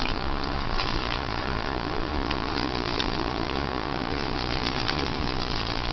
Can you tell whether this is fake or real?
fake